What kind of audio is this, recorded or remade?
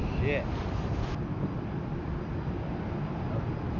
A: recorded